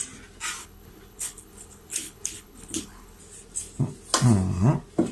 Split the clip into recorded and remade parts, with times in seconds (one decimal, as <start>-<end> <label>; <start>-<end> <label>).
0.0-0.6 recorded; 0.6-3.2 remade; 3.2-5.1 recorded